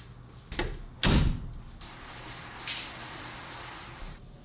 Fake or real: real